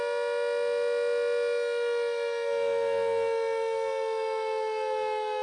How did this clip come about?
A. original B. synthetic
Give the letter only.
A